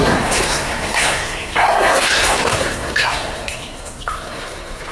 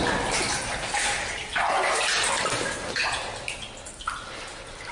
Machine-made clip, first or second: first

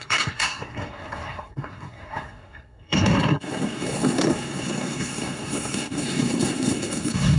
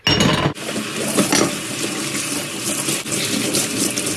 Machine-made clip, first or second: first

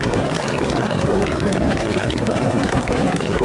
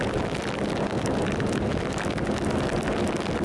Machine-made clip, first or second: first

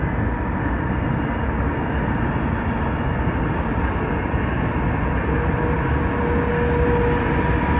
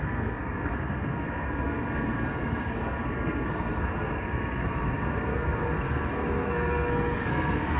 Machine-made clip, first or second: second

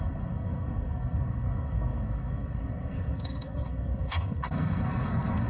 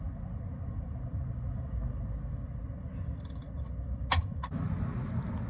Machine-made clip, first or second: first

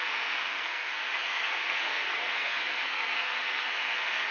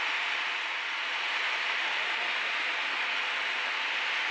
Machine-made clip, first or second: first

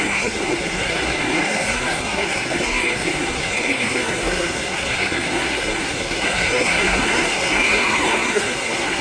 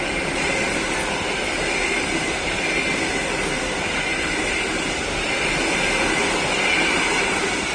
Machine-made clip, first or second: first